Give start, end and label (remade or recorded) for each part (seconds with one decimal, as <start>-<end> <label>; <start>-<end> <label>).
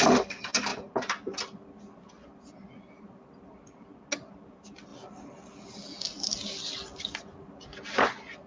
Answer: 0.0-8.5 recorded